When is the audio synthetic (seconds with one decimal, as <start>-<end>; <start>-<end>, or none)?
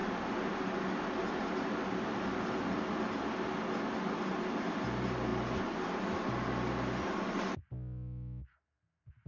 none